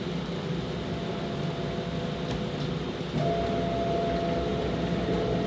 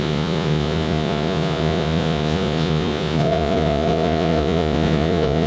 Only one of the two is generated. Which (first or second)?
second